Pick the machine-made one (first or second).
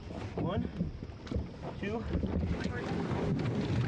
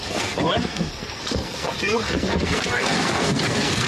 second